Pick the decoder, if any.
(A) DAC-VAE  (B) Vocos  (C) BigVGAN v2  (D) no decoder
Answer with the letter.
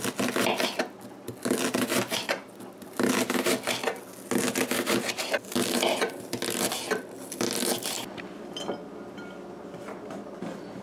D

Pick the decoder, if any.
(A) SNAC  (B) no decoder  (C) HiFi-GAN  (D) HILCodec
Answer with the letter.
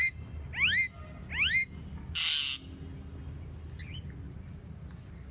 B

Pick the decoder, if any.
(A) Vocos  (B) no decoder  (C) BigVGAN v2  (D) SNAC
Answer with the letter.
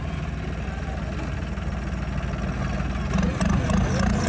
B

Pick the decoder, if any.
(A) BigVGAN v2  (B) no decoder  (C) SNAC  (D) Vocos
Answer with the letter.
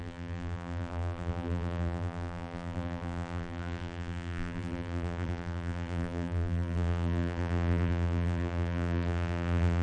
A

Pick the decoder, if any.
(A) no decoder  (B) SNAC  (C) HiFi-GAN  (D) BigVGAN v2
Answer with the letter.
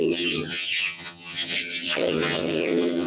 C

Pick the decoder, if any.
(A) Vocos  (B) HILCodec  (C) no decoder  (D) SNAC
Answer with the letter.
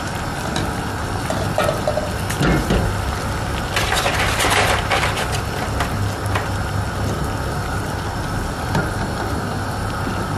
C